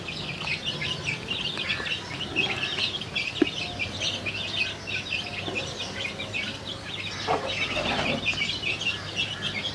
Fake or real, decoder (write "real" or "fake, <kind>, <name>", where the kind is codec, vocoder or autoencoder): real